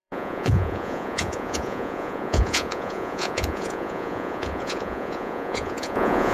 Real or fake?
fake